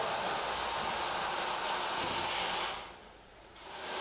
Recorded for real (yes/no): yes